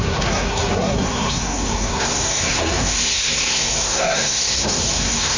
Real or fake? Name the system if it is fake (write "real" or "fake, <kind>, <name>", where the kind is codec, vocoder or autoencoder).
fake, codec, SNAC